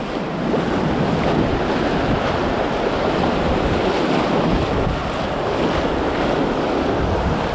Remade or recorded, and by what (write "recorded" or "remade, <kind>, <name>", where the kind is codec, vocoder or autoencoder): recorded